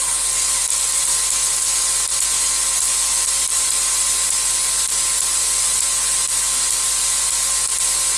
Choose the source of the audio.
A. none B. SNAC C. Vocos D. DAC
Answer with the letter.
A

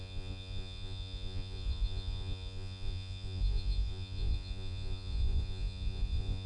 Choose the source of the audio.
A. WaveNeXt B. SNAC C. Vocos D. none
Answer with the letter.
C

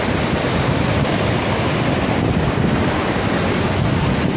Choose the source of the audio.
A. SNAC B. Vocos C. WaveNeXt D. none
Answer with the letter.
D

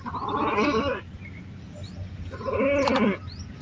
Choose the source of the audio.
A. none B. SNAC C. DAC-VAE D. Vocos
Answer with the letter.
A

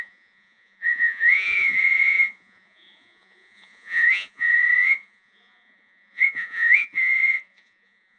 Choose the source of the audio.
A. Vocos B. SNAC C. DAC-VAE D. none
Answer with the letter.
A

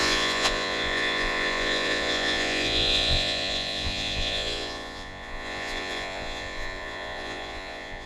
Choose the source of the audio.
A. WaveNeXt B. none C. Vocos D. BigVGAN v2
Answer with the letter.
C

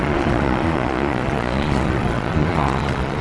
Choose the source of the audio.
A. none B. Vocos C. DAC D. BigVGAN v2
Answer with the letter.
B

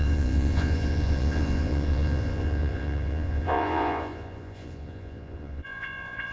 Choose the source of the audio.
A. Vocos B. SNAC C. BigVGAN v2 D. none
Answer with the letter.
A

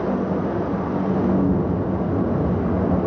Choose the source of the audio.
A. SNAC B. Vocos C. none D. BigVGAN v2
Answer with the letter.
C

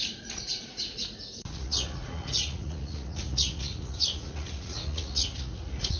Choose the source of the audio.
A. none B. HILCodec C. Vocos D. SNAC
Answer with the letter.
C